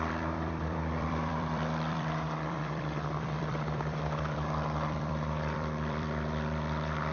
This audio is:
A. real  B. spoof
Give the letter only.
B